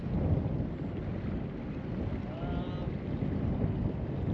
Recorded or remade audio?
recorded